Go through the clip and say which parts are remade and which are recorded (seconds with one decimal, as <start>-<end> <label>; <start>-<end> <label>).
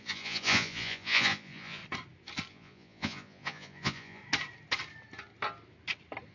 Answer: 0.0-1.8 remade; 1.8-2.5 recorded; 2.5-4.2 remade; 4.2-6.3 recorded